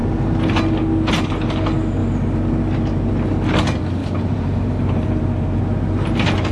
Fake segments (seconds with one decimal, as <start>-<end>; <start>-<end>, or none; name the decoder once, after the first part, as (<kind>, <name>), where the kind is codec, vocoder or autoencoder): 4.0-5.6 (vocoder, BigVGAN v2)